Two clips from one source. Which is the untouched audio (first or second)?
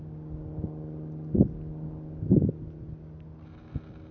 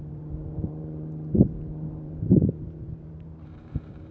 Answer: first